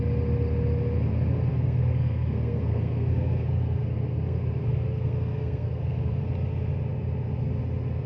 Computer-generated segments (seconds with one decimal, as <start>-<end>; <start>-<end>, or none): 1.5-6.2

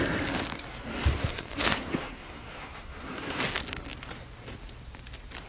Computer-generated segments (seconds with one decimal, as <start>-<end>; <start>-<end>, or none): 1.1-3.4

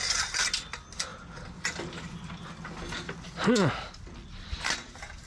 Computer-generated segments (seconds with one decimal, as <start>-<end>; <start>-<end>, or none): none

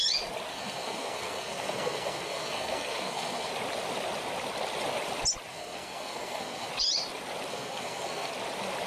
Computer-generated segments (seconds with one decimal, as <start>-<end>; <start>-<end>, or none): 0.5-3.5; 5.5-6.7; 7.5-8.3

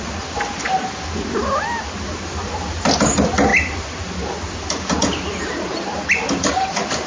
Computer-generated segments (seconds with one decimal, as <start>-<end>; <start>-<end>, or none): none

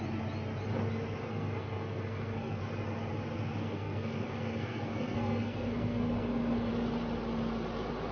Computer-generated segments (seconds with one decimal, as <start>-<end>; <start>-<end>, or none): 1.3-2.6; 3.6-6.7